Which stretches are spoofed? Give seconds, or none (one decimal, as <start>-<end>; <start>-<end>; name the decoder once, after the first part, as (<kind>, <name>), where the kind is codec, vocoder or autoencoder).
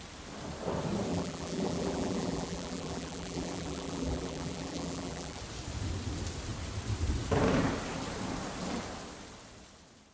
1.1-5.4 (vocoder, BigVGAN v2)